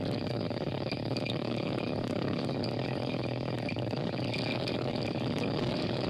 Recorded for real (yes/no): no